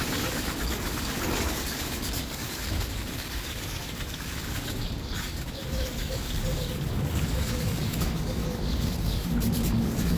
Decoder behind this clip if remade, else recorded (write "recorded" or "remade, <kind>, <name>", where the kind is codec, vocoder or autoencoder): remade, codec, DAC